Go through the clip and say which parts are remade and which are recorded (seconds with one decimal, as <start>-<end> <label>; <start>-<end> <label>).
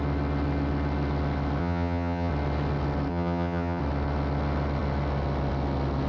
0.0-1.6 recorded; 1.6-2.3 remade; 2.3-3.1 recorded; 3.1-3.8 remade; 3.8-6.1 recorded